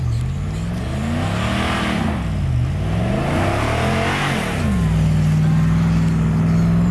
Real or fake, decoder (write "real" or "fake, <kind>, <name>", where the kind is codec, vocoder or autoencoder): real